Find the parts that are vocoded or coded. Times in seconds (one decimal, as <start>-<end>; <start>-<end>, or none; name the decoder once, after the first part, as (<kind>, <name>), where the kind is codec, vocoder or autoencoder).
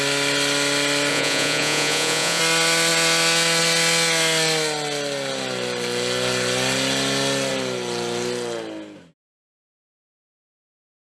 1.1-2.4 (vocoder, Vocos)